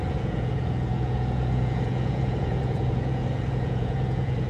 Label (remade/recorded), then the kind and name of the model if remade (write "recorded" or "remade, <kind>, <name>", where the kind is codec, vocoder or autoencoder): remade, vocoder, Vocos